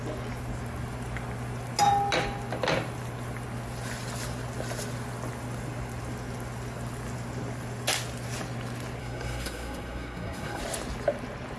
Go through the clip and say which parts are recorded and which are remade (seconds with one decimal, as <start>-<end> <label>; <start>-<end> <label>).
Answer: 0.0-9.0 recorded; 9.0-10.6 remade; 10.6-11.6 recorded

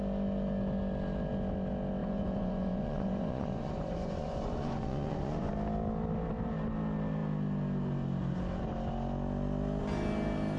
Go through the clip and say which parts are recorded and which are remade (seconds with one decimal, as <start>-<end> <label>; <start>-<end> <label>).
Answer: 0.0-2.0 recorded; 2.0-5.5 remade; 5.5-10.6 recorded

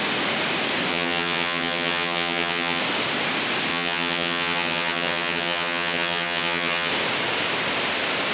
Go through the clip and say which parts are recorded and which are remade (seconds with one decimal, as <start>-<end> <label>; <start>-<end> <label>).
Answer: 0.0-0.9 recorded; 0.9-2.8 remade; 2.8-3.7 recorded; 3.7-6.9 remade; 6.9-8.3 recorded

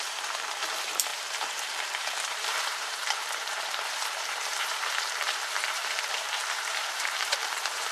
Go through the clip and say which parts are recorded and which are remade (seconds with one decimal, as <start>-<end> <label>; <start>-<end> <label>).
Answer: 0.0-7.9 remade

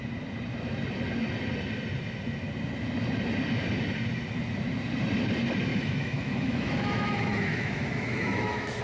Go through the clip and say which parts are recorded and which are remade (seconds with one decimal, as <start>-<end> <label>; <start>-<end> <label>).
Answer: 0.0-5.7 recorded; 5.7-8.8 remade